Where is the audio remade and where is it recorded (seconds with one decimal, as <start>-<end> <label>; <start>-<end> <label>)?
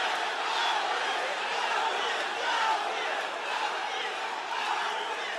0.0-0.6 recorded; 0.6-2.3 remade; 2.3-3.8 recorded; 3.8-5.4 remade